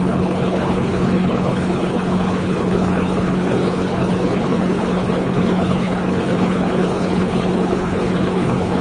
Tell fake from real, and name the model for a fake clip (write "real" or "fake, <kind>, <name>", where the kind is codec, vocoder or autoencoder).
fake, codec, HILCodec